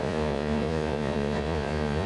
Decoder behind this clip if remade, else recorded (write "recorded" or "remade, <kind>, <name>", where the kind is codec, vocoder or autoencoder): remade, vocoder, Vocos